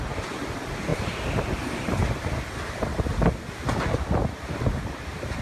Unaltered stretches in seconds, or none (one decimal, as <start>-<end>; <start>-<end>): 0.0-5.4